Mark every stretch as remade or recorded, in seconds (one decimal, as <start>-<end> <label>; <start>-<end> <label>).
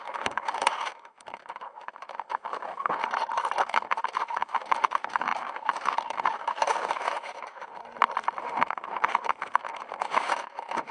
0.0-3.0 remade; 3.0-3.6 recorded; 3.6-7.8 remade; 7.8-8.4 recorded; 8.4-10.9 remade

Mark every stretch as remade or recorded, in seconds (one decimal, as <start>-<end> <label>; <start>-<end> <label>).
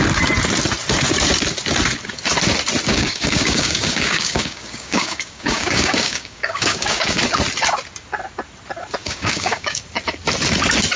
0.0-2.9 recorded; 2.9-7.2 remade; 7.2-9.0 recorded; 9.0-9.8 remade; 9.8-11.0 recorded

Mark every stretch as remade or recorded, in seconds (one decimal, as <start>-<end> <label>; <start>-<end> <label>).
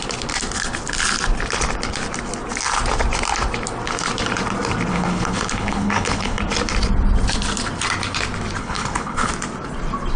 0.0-4.9 recorded; 4.9-6.4 remade; 6.4-8.6 recorded; 8.6-9.3 remade; 9.3-10.2 recorded